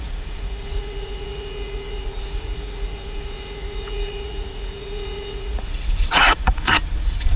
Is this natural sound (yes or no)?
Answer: no